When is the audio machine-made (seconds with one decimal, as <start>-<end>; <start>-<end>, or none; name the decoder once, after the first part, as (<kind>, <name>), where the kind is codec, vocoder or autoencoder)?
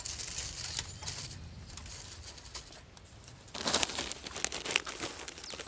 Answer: none